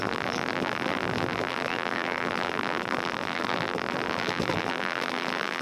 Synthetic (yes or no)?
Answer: yes